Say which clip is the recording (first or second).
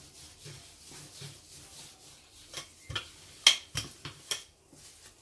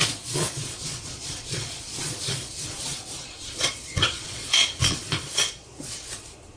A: first